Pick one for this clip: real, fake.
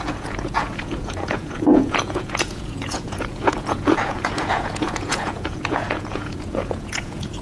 fake